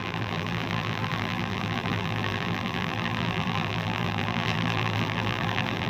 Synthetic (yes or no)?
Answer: yes